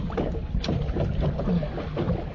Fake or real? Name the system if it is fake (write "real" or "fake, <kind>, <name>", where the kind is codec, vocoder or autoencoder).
real